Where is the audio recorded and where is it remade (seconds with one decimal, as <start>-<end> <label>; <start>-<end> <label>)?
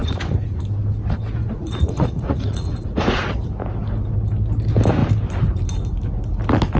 0.0-0.6 remade; 0.6-1.4 recorded; 1.4-3.4 remade; 3.4-6.8 recorded